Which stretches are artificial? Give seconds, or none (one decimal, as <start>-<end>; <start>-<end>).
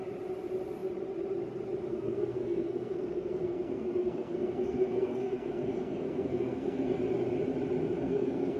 1.9-7.0; 7.8-8.6